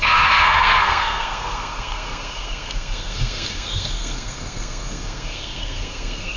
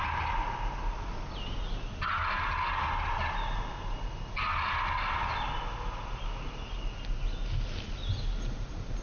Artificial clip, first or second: first